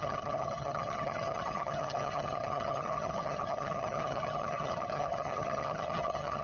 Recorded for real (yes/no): no